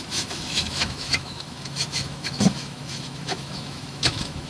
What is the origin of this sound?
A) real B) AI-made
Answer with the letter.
B